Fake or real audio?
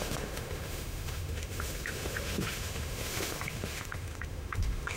fake